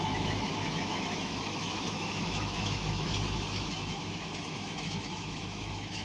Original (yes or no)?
no